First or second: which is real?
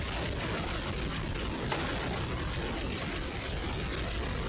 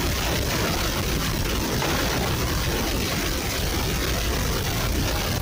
first